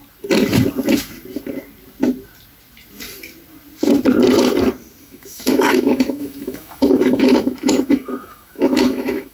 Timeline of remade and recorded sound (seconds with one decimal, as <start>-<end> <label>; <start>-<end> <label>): 0.0-5.0 recorded; 5.0-9.3 remade